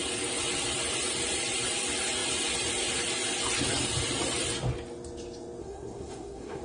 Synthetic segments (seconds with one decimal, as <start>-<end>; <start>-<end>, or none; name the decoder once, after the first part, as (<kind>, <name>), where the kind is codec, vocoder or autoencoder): 5.6-6.6 (codec, SNAC)